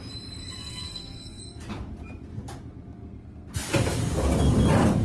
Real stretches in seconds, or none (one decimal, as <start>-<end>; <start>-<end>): 0.0-0.6; 1.4-3.0; 3.5-5.0

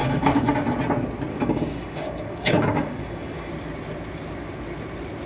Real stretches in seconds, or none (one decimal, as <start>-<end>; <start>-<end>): 0.5-1.3; 3.5-5.3

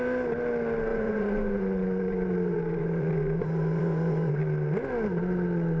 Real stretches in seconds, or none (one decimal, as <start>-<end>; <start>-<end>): 0.0-0.9; 4.3-5.8

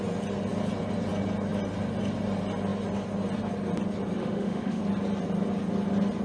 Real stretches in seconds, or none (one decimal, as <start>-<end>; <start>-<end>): 0.0-4.2; 4.8-6.2

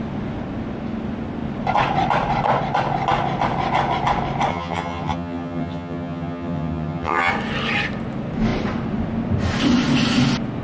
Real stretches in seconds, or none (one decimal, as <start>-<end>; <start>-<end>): 0.0-4.5; 7.3-10.6

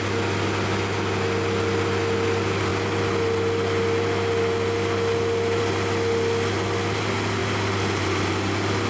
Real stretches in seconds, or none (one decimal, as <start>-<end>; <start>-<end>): 0.0-8.9